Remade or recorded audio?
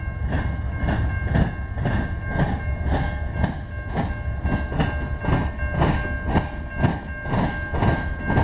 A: recorded